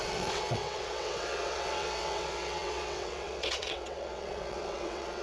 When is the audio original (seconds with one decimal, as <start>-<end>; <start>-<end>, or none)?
none